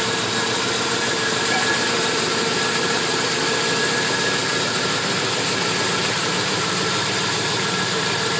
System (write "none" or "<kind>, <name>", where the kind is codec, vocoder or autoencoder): vocoder, BigVGAN v2